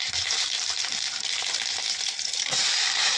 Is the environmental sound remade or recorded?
remade